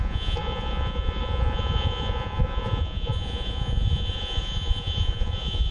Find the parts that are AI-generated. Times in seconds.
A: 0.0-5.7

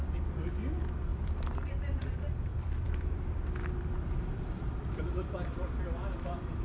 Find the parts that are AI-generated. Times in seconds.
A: 1.1-2.0; 2.5-5.0

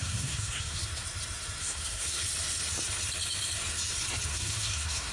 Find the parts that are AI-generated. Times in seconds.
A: 0.0-0.8; 1.6-2.2; 4.3-5.1

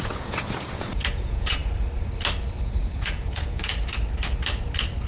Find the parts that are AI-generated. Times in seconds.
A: 0.0-1.6; 2.6-3.7

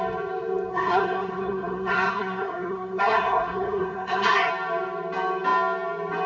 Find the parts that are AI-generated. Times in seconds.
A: 0.7-4.5

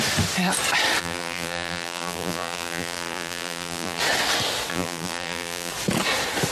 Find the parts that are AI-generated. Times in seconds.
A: 1.0-4.0; 4.7-5.7

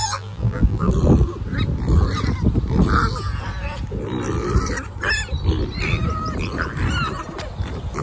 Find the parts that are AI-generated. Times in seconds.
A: 0.0-0.9

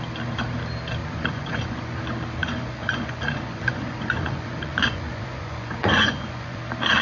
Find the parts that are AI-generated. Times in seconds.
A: 1.0-2.0; 2.4-6.6